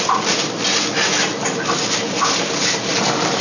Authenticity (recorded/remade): recorded